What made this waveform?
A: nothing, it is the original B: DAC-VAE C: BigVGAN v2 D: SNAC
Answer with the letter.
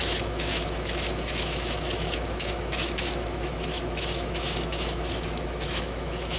B